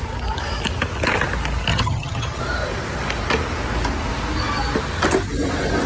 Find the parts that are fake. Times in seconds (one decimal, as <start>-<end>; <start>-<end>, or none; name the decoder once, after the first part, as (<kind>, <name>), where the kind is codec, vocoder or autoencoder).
1.7-2.4 (vocoder, HiFi-GAN)